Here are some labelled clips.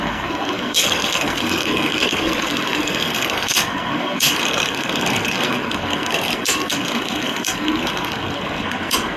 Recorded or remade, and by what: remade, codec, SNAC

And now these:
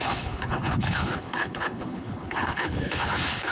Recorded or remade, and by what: remade, codec, HILCodec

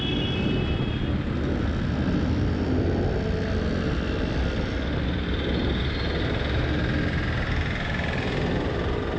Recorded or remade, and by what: recorded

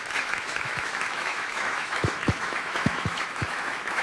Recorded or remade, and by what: remade, autoencoder, DAC-VAE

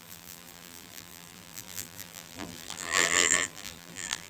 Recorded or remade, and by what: remade, vocoder, BigVGAN v2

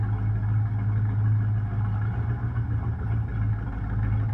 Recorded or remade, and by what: recorded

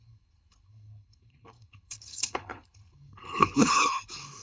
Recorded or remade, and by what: remade, codec, HILCodec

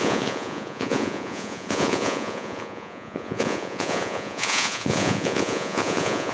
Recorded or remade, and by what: remade, vocoder, Vocos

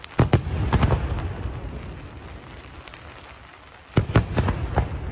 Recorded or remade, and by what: recorded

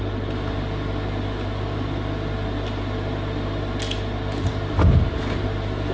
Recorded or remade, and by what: recorded